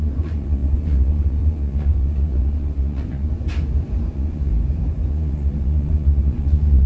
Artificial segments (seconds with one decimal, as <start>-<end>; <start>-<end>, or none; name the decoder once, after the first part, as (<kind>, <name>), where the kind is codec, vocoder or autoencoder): 0.0-3.3 (vocoder, Vocos); 4.1-4.5; 5.1-6.9